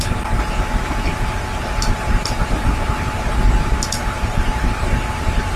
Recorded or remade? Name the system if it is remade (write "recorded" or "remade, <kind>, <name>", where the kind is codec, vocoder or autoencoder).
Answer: remade, vocoder, BigVGAN v2